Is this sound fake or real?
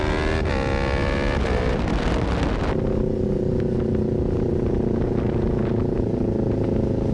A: real